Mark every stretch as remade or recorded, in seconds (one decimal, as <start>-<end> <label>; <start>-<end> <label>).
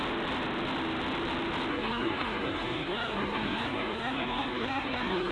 0.0-1.7 recorded; 1.7-5.3 remade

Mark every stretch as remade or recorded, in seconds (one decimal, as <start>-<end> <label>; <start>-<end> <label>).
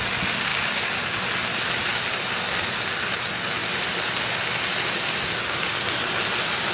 0.0-6.7 recorded